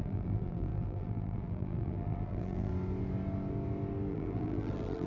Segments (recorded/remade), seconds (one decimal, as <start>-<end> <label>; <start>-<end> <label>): 0.0-2.7 remade; 2.7-4.1 recorded; 4.1-5.1 remade

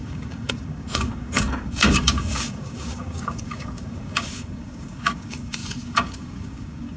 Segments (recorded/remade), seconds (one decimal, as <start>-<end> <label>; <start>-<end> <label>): 0.0-7.0 remade

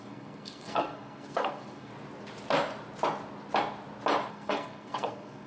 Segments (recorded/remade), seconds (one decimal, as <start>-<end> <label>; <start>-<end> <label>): 0.0-1.9 remade; 1.9-4.3 recorded; 4.3-5.5 remade

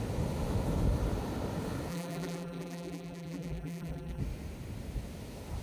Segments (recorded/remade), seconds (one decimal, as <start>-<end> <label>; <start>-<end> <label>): 0.0-1.9 recorded; 1.9-4.2 remade; 4.2-5.6 recorded

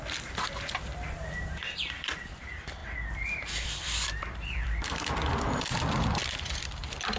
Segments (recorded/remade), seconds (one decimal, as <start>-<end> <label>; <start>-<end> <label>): 0.0-7.2 remade

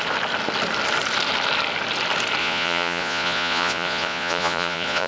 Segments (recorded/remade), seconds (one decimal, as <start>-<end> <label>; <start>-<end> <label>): 0.0-2.4 recorded; 2.4-5.1 remade

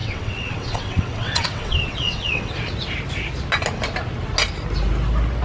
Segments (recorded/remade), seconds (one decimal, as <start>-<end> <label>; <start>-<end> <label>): 0.0-2.5 remade; 2.5-5.4 recorded